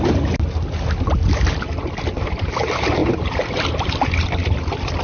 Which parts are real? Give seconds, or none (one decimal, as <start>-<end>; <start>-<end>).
0.0-5.0